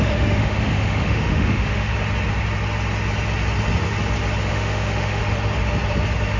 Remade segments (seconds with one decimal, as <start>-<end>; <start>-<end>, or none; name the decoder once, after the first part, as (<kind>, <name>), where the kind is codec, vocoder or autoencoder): 0.0-1.9 (autoencoder, DAC-VAE); 4.5-5.2